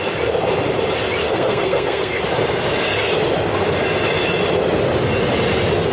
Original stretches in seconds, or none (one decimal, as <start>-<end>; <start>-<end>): 0.0-1.2; 2.2-5.9